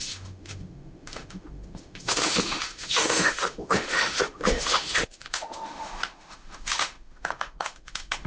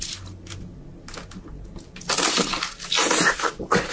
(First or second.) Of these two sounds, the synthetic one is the first